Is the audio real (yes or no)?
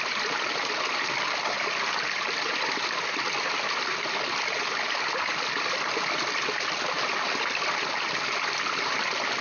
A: yes